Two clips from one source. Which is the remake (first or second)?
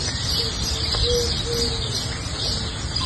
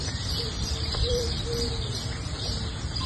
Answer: second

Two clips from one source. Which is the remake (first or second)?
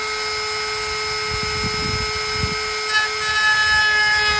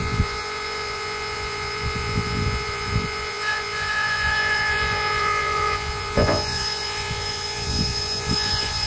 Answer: second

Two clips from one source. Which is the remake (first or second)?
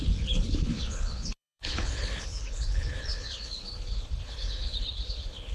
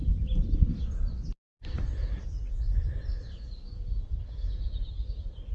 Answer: first